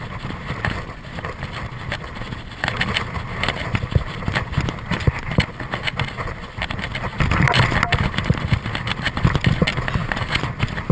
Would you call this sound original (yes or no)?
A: yes